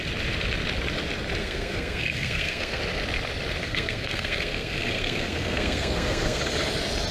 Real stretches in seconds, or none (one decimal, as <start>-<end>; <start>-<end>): 0.0-1.4; 2.8-3.6; 6.4-7.1